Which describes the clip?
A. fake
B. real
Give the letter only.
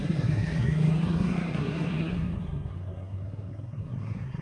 A